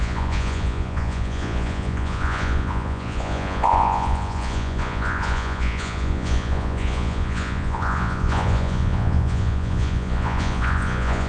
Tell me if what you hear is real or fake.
fake